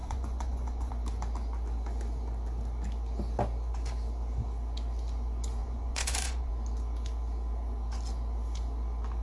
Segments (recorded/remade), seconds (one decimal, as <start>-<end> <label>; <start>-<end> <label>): 0.0-0.9 remade; 0.9-5.6 recorded; 5.6-6.5 remade; 6.5-9.2 recorded